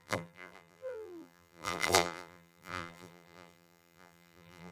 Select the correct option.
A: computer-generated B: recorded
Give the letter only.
A